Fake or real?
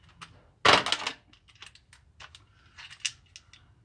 real